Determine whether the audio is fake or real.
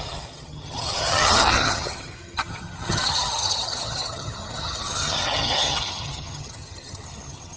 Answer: fake